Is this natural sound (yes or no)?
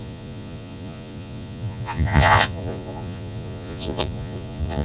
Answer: no